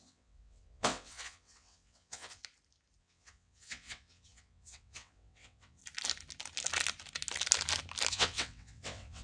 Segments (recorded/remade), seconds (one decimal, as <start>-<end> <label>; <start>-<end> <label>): 0.0-2.4 remade; 2.4-3.0 recorded; 3.0-5.8 remade; 5.8-8.1 recorded; 8.1-9.2 remade

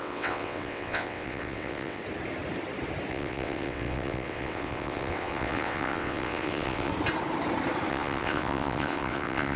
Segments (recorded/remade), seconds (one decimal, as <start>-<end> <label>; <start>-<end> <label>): 0.0-2.0 remade; 2.0-3.1 recorded; 3.1-6.9 remade; 6.9-7.9 recorded; 7.9-9.6 remade

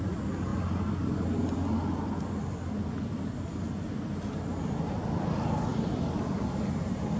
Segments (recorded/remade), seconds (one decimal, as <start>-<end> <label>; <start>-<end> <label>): 0.0-7.2 recorded

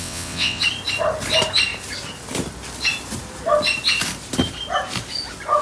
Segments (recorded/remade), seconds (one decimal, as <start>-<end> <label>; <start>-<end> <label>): 0.0-0.6 remade; 0.6-5.6 recorded